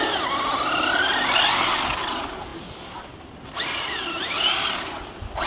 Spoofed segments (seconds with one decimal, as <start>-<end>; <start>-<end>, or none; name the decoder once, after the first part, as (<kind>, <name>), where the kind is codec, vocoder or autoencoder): none